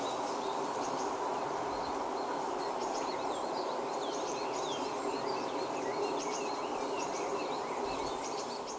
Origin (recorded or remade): recorded